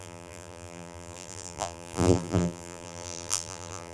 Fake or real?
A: fake